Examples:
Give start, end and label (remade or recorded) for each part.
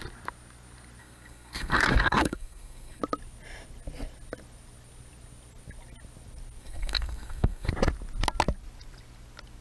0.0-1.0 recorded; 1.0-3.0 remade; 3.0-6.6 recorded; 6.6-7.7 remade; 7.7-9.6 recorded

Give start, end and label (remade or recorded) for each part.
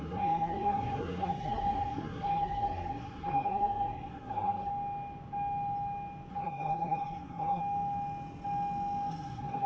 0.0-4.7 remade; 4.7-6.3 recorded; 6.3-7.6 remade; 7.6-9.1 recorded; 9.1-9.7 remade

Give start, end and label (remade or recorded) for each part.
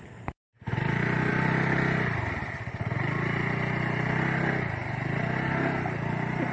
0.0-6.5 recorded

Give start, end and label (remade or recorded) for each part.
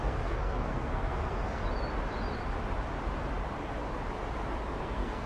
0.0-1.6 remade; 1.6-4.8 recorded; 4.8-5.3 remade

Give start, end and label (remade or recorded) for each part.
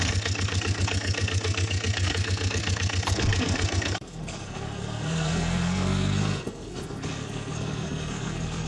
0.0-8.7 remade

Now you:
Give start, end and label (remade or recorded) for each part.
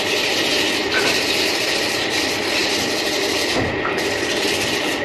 0.0-5.0 recorded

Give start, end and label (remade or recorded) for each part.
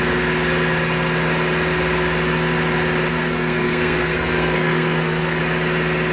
0.0-3.1 recorded; 3.1-5.4 remade; 5.4-6.1 recorded